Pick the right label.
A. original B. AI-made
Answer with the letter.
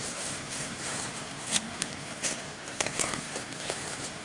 B